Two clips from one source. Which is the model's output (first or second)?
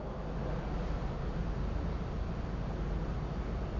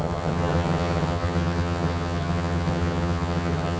second